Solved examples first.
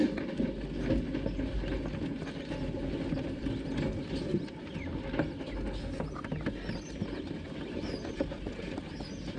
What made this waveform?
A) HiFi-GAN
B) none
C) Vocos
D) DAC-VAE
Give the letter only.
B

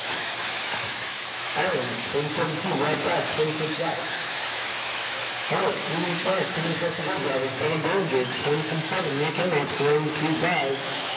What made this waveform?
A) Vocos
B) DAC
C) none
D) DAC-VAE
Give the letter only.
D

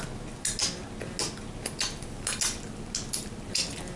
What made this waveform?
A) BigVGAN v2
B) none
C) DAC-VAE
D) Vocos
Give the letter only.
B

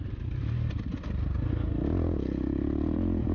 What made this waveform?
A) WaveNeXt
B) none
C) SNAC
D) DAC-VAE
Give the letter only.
B